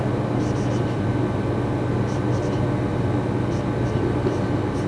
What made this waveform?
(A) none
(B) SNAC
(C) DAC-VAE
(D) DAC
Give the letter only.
A